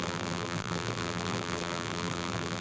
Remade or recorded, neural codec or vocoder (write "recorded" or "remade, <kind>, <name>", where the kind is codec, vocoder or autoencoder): remade, vocoder, BigVGAN v2